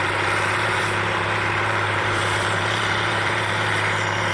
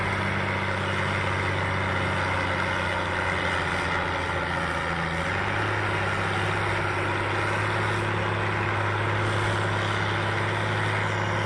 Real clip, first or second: second